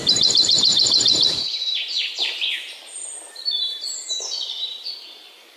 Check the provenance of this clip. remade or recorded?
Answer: remade